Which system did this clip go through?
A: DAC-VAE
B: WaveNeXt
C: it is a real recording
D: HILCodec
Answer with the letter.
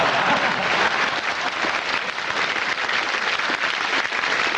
C